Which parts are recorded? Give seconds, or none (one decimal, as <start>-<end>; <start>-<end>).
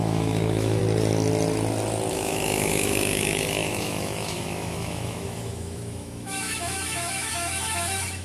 0.8-2.1